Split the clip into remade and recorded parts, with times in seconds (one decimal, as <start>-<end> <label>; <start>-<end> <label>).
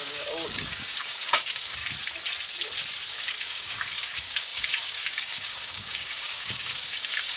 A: 0.0-1.8 remade; 1.8-3.1 recorded; 3.1-7.4 remade